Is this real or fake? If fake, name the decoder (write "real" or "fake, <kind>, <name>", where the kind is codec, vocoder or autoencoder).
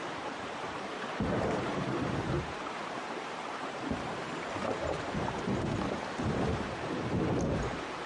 fake, vocoder, BigVGAN v2